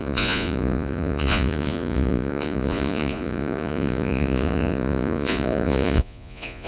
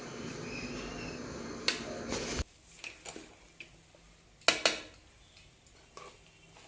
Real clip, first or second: second